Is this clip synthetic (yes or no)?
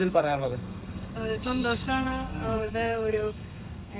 yes